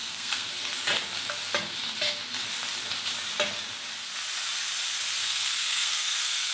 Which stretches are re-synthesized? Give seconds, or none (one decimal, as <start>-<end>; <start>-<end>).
0.0-0.5; 5.2-6.5